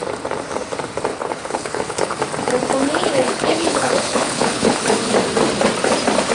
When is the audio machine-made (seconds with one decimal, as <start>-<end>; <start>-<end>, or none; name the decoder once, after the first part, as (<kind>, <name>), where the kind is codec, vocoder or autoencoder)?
1.1-2.2 (codec, HILCodec); 2.8-4.8